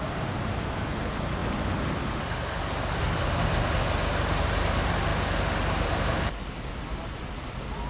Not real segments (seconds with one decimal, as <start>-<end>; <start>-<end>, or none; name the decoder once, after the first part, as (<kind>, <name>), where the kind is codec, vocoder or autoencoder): none